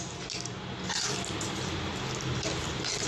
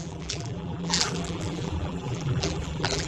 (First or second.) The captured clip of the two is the first